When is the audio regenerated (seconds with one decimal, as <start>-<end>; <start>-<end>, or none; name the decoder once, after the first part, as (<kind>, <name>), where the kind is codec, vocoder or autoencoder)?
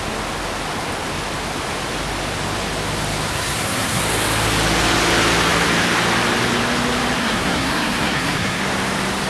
3.3-4.0 (codec, SNAC); 7.2-8.6